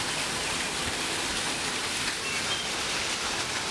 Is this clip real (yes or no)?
yes